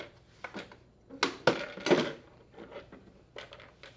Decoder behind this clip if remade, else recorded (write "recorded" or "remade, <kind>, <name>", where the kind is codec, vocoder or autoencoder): recorded